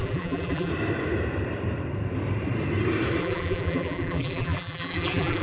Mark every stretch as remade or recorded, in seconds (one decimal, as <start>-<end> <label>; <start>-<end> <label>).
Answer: 0.0-0.7 remade; 0.7-3.2 recorded; 3.2-5.4 remade